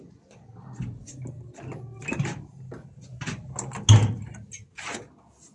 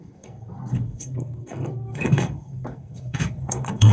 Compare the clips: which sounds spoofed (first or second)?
second